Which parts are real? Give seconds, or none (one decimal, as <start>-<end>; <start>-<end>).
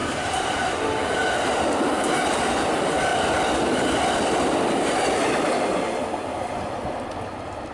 0.0-7.7